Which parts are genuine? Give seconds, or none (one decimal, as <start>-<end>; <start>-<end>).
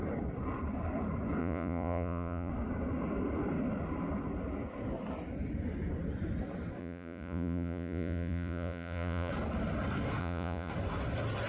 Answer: 0.0-1.4; 2.5-6.8; 9.3-10.2; 10.7-11.5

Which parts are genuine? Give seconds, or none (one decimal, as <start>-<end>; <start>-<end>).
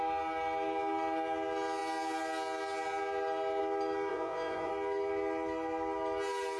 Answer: 0.0-4.1; 4.7-6.6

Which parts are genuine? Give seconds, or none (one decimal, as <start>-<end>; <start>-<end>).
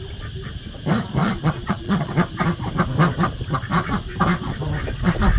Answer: 0.0-1.2; 2.1-5.4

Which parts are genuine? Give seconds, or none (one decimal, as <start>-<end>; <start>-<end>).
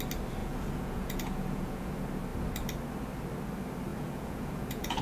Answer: 0.0-0.4; 1.9-3.9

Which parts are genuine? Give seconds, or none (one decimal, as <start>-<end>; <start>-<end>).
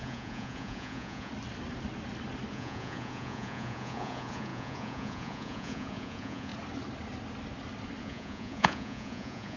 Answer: 1.3-2.5; 6.5-8.0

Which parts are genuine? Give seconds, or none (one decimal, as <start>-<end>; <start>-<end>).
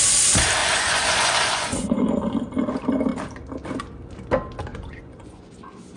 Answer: 0.0-0.6; 2.1-4.7; 5.5-6.0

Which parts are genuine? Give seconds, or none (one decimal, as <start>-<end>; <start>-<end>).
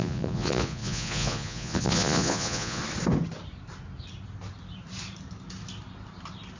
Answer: 2.8-6.6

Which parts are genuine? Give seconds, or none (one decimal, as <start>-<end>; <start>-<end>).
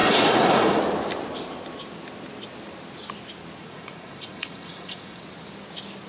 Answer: 0.8-3.6; 5.2-6.1